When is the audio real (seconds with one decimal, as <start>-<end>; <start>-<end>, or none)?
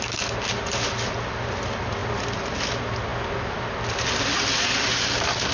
0.0-5.5